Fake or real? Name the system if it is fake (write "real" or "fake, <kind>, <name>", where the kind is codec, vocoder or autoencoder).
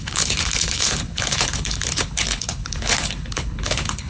fake, codec, HILCodec